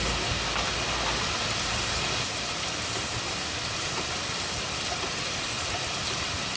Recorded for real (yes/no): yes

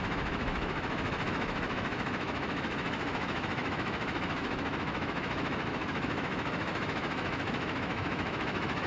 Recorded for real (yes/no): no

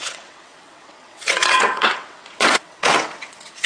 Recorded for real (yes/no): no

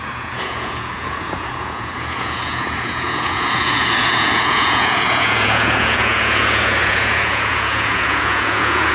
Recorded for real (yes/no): no